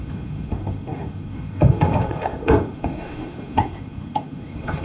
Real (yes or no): no